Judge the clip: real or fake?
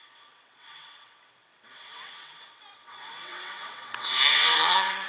fake